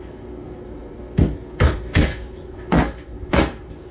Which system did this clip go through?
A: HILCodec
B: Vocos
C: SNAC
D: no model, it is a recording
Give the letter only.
C